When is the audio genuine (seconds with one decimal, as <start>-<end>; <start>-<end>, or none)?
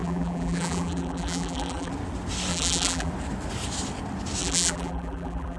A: 1.9-2.5; 3.1-4.4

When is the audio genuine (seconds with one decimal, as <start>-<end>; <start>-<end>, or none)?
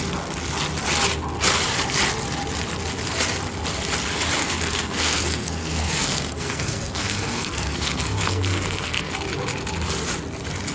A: 0.0-4.4; 9.1-10.7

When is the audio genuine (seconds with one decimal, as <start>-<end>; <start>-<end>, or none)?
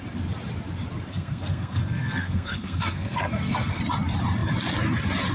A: 0.0-1.1; 3.8-5.3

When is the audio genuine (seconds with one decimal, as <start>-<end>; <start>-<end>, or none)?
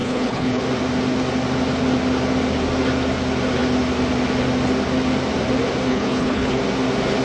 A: 0.6-5.9; 6.6-7.2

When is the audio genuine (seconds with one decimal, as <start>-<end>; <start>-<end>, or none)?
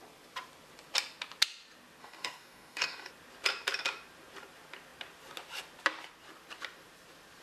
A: 0.0-2.0; 3.1-7.4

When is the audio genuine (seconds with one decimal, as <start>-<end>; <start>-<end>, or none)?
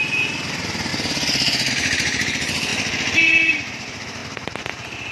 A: 0.9-1.7; 2.7-3.5; 4.2-5.1